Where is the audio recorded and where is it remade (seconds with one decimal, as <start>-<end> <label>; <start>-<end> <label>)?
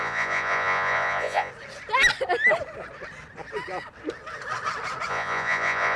0.0-1.5 remade; 1.5-5.1 recorded; 5.1-6.0 remade